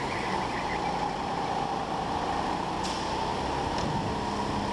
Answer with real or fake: real